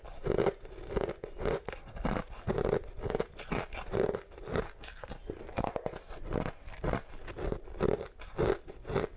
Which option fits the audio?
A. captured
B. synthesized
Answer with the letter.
A